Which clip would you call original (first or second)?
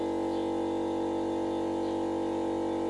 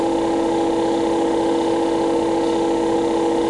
first